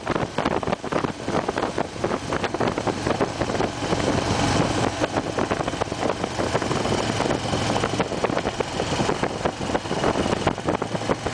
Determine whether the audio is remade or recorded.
recorded